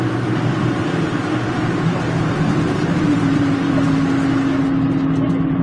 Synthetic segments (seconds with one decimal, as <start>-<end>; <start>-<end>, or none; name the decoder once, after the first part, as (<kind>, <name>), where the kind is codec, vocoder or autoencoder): 0.5-3.9 (vocoder, BigVGAN v2)